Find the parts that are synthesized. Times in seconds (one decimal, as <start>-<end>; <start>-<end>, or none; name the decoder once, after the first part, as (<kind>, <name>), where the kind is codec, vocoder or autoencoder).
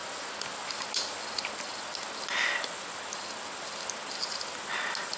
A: none